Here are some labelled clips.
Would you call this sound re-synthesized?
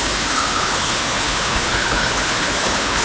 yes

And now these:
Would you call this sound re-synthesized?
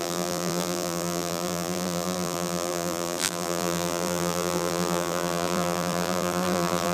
yes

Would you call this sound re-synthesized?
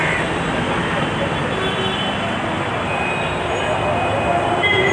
no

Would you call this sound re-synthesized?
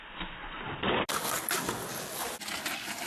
no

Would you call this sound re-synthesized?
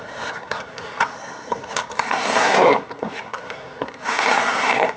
yes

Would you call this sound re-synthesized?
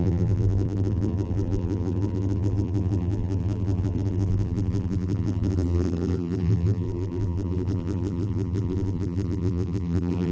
yes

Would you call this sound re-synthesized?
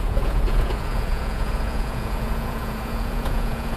yes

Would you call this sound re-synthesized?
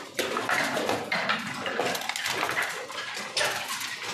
no